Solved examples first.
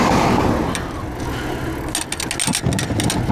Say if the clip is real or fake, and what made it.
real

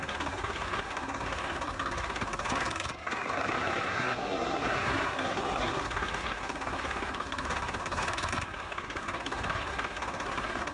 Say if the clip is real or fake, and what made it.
fake, codec, SNAC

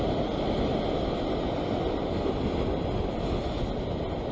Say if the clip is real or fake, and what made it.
real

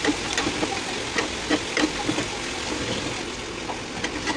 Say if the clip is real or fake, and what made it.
real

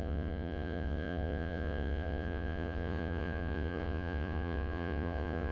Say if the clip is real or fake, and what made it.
fake, vocoder, Vocos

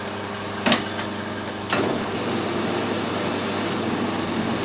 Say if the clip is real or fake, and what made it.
real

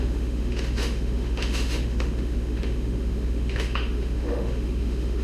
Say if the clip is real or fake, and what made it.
fake, autoencoder, DAC-VAE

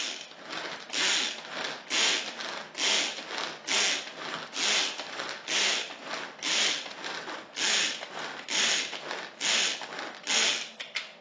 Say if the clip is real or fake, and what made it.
real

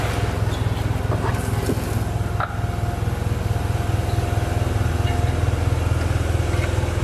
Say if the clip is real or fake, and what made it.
real